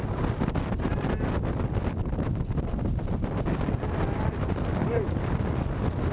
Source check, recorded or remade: recorded